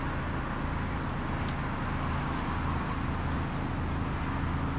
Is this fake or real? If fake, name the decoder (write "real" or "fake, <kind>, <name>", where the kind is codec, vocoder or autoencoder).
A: real